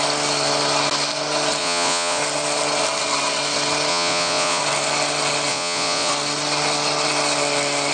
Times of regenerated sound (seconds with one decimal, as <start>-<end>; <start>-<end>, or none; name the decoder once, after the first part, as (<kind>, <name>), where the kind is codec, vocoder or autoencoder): 1.6-2.2 (vocoder, Vocos); 3.9-4.6; 5.5-6.1